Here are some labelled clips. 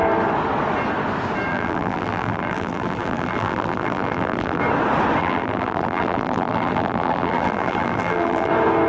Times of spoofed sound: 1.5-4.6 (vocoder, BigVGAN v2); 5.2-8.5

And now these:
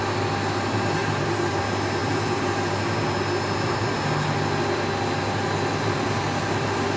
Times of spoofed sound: 1.0-1.6 (vocoder, BigVGAN v2)

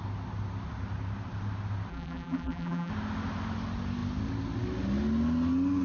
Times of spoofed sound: 1.9-2.9 (vocoder, BigVGAN v2)

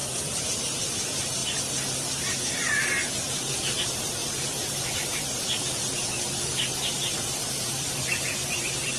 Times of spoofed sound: 0.0-1.4 (vocoder, BigVGAN v2); 3.1-9.0

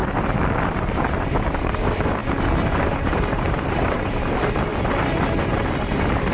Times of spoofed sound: 1.1-2.2 (vocoder, BigVGAN v2); 2.7-4.7; 5.4-6.3

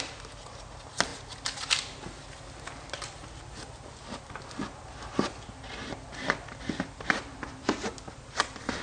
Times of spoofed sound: none

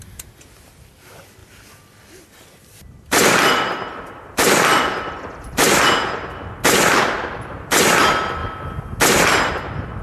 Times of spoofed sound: 1.4-5.8 (vocoder, BigVGAN v2); 6.9-7.9